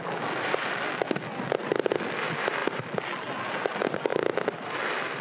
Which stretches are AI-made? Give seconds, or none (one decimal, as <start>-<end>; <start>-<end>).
none